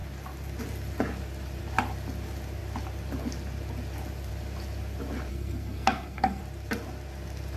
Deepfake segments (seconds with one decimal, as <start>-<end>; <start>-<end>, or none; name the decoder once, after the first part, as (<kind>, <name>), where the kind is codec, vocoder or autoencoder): 5.3-6.4 (codec, SNAC)